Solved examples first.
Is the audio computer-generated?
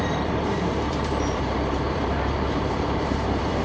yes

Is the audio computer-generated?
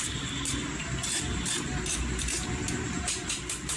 no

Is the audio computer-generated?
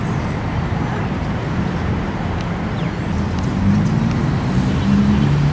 no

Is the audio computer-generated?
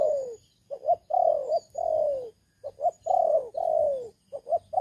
no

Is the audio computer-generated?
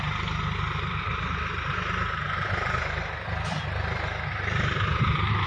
no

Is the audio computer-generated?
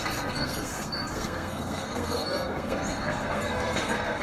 yes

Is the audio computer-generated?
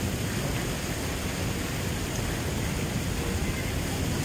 no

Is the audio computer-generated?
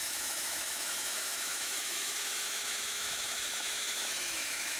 yes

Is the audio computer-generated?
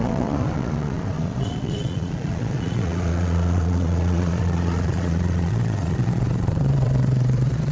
yes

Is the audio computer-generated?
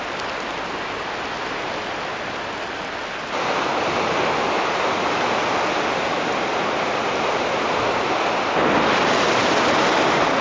no